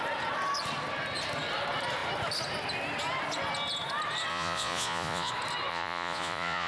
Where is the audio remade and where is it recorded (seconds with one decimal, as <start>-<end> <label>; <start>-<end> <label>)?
0.0-4.3 recorded; 4.3-5.3 remade; 5.3-5.7 recorded; 5.7-6.7 remade